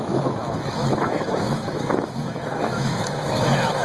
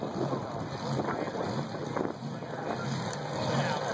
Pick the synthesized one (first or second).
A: first